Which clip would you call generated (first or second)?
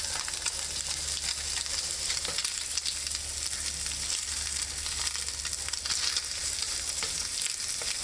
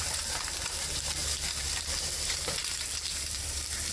second